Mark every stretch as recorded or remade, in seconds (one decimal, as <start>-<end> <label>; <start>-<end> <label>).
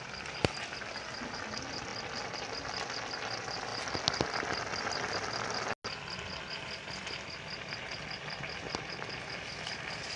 0.0-10.2 recorded